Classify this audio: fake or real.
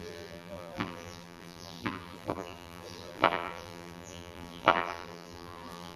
fake